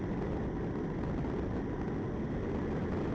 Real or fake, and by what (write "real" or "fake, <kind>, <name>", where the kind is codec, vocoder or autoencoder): real